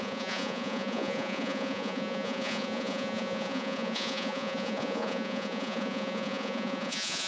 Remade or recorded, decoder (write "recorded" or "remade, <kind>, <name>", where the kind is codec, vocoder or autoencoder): remade, vocoder, Vocos